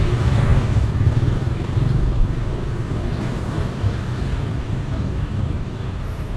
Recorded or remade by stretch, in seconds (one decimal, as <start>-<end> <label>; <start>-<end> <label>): 0.0-6.4 remade